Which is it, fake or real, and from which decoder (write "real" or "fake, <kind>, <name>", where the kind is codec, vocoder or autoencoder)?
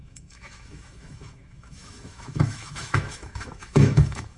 fake, autoencoder, DAC-VAE